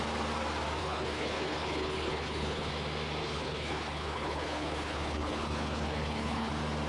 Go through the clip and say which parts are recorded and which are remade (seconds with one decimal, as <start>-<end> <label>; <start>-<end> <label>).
0.0-0.8 recorded; 0.8-2.7 remade; 2.7-3.2 recorded; 3.2-6.5 remade; 6.5-6.9 recorded